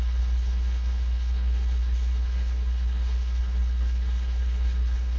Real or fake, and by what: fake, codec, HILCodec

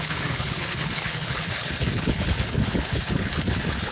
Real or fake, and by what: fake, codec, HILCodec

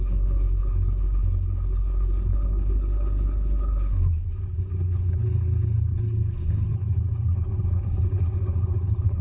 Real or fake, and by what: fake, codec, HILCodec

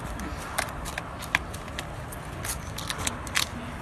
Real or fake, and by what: real